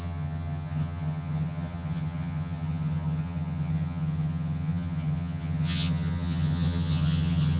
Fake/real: fake